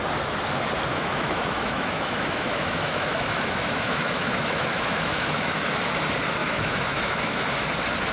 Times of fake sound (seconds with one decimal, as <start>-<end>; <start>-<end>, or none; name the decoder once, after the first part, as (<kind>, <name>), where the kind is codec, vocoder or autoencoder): 0.9-5.6 (autoencoder, DAC-VAE); 6.4-7.4